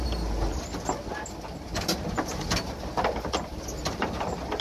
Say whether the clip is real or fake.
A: real